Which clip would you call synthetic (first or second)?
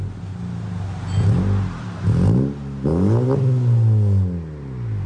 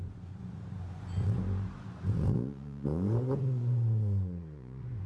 second